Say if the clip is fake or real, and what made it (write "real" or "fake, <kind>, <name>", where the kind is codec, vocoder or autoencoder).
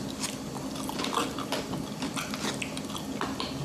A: real